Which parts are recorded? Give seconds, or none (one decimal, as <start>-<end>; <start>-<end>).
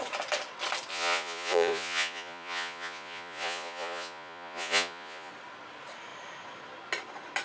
0.0-0.9; 5.3-7.4